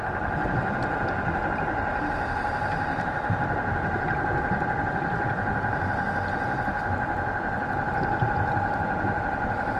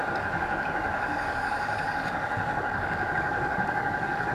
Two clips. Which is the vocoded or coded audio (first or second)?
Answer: second